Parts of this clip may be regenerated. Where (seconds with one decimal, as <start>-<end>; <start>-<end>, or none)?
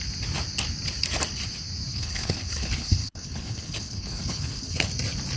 1.9-4.9